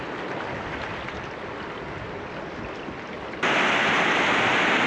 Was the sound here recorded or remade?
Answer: recorded